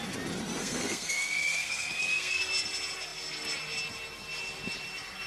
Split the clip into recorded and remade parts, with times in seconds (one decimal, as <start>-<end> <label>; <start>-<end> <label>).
0.0-0.6 recorded; 0.6-2.4 remade; 2.4-5.3 recorded